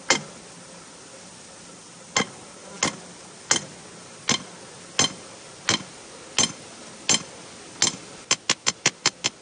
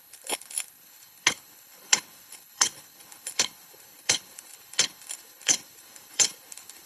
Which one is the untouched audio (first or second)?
first